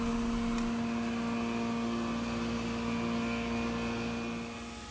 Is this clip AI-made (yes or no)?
no